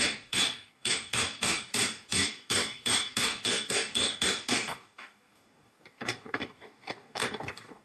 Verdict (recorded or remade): remade